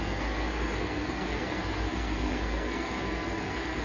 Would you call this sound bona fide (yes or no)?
no